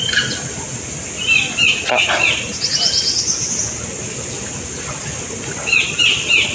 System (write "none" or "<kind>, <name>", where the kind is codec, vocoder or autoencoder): none